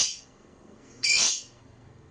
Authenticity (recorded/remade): remade